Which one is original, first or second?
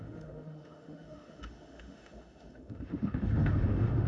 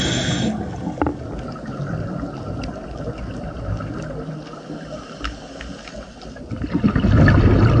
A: second